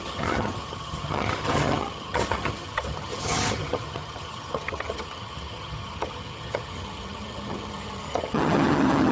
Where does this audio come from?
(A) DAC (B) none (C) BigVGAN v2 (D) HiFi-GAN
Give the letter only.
D